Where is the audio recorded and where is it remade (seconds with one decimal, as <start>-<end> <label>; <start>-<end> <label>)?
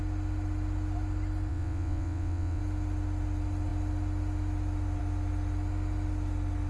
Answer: 0.0-1.5 recorded; 1.5-2.6 remade; 2.6-6.7 recorded